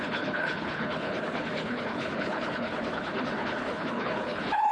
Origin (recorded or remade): remade